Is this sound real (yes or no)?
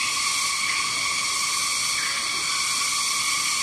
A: yes